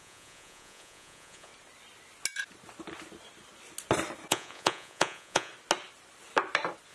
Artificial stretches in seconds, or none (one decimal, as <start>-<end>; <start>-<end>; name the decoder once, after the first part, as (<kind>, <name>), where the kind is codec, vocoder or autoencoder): 0.0-1.5 (vocoder, Vocos); 4.3-5.5

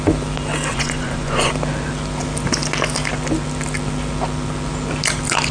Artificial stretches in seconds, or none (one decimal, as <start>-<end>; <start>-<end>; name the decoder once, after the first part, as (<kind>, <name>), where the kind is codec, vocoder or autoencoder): 0.7-1.5 (vocoder, Vocos)

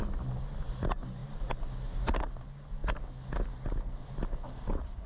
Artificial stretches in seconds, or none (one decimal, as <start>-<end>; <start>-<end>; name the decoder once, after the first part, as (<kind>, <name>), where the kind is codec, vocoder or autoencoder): none

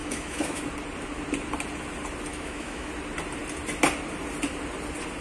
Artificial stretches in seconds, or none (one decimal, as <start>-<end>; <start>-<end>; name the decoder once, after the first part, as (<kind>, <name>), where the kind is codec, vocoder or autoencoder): 0.0-0.6 (autoencoder, DAC-VAE); 2.3-2.9